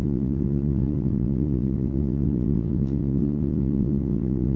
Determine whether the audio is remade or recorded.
remade